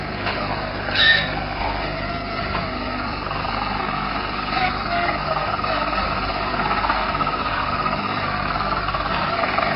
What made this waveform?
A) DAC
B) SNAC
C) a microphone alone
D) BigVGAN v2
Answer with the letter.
B